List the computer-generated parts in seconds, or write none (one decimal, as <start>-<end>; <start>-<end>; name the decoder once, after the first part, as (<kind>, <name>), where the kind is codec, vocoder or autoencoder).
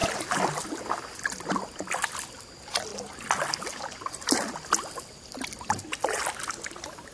none